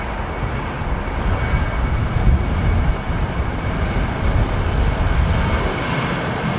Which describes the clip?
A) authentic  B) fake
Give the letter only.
A